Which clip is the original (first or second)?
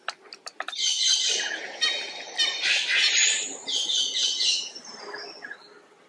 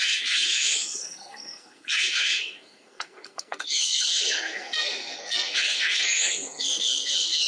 first